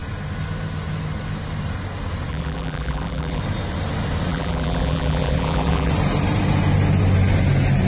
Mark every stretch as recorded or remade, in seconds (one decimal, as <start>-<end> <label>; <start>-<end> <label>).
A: 0.0-2.3 recorded; 2.3-3.4 remade; 3.4-4.3 recorded; 4.3-5.9 remade; 5.9-7.9 recorded